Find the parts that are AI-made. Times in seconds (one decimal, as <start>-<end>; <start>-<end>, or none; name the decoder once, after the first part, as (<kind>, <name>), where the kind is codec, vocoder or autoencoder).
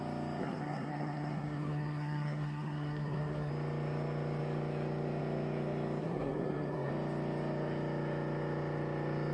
0.4-3.5 (codec, SNAC); 6.0-6.9